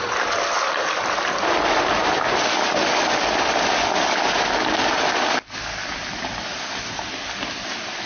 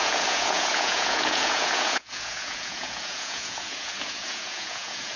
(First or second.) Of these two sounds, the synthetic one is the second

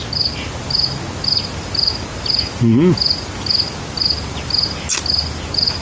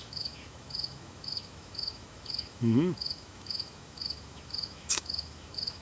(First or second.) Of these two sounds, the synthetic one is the second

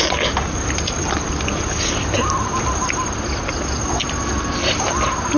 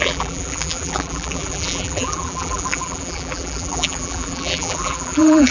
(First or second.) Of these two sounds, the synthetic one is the second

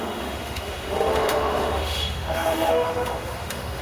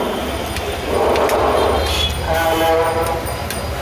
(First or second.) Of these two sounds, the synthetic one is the first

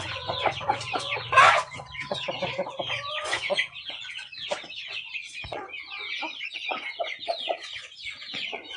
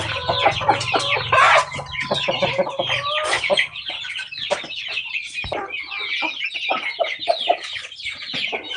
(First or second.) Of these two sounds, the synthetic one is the first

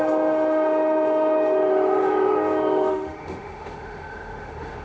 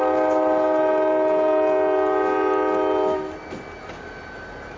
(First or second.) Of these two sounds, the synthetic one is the first